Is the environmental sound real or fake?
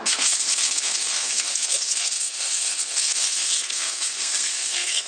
fake